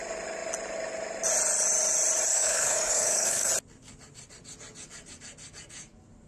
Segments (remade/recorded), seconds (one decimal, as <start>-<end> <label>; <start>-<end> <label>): 0.0-2.3 recorded; 2.3-3.5 remade; 3.5-6.3 recorded